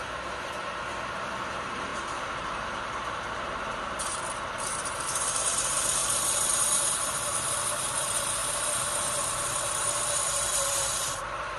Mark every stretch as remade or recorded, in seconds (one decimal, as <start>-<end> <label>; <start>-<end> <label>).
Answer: 0.0-11.6 remade